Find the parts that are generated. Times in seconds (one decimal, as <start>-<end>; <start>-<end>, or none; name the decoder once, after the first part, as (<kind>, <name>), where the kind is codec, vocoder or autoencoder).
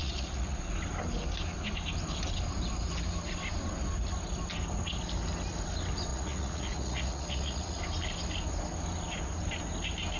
0.0-0.7 (vocoder, Vocos); 6.1-7.8